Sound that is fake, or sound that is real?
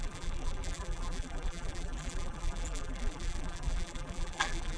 fake